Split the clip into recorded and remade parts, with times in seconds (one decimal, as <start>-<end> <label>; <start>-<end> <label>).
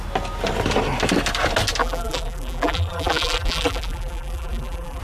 0.0-1.8 recorded; 1.8-5.0 remade